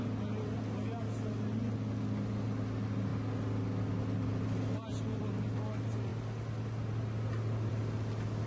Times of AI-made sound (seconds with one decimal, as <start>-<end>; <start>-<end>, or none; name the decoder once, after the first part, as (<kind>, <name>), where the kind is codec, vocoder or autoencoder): none